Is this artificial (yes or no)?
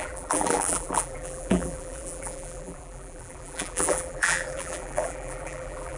yes